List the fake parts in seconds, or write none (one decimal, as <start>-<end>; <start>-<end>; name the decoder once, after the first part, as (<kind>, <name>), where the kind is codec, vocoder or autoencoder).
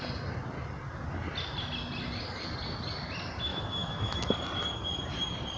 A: 3.5-4.3 (autoencoder, DAC-VAE)